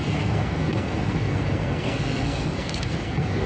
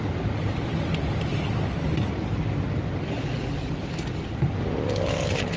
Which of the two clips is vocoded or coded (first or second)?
first